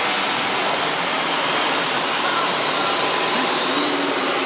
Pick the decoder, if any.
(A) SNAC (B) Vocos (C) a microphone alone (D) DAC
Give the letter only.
C